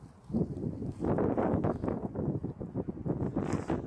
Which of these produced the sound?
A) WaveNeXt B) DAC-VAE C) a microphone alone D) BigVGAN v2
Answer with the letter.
C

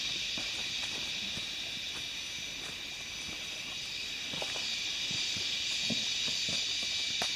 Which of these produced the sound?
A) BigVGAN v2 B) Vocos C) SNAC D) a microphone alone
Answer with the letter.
D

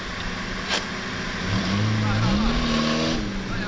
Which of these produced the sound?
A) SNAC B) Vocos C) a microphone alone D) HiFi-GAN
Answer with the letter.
C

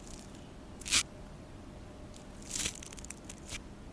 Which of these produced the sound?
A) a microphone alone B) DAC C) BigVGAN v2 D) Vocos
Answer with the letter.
A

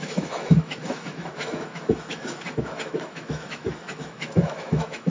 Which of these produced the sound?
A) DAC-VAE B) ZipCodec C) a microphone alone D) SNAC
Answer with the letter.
A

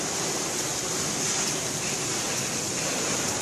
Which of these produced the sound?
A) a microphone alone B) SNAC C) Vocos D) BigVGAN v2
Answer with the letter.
A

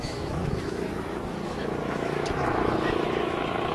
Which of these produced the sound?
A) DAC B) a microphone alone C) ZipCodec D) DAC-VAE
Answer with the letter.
D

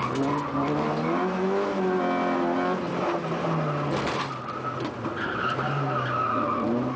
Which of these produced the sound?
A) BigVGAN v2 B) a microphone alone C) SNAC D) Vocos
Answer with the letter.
B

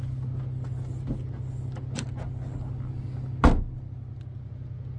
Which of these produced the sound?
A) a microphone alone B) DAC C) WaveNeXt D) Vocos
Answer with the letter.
A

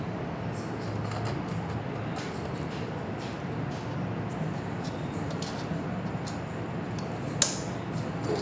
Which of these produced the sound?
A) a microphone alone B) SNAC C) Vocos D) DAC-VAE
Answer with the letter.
A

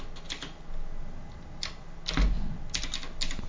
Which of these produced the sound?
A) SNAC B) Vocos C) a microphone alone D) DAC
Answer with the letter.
C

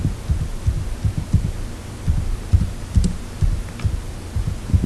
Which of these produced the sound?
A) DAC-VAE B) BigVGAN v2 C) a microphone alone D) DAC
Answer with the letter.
C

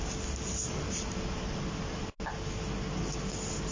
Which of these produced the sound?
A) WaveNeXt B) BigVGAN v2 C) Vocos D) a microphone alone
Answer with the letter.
D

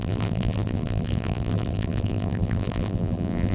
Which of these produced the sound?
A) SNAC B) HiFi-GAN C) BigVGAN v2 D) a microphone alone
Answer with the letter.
C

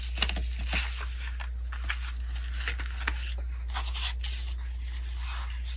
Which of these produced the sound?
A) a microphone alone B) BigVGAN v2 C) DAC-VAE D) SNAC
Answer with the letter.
A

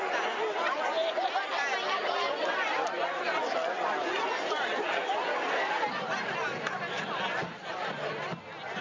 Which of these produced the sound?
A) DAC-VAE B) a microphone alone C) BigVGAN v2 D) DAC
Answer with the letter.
B